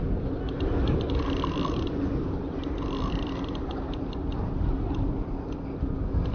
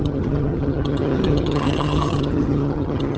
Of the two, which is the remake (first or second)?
second